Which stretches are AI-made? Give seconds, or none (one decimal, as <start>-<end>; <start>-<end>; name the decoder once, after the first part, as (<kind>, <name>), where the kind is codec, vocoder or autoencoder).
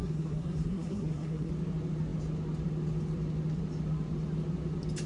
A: 0.0-1.5 (codec, SNAC)